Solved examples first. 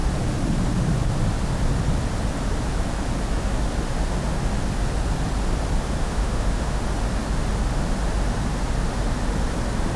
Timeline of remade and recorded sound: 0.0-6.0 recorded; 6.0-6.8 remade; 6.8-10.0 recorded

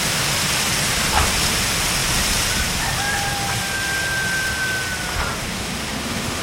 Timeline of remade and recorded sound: 0.0-5.5 recorded; 5.5-6.4 remade

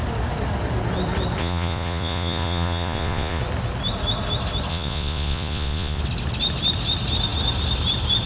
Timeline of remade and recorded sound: 0.0-1.4 recorded; 1.4-3.4 remade; 3.4-4.7 recorded; 4.7-6.0 remade; 6.0-8.3 recorded